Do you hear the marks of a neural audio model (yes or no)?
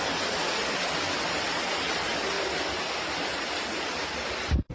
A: no